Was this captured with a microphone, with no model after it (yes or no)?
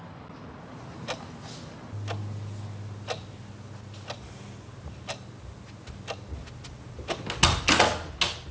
yes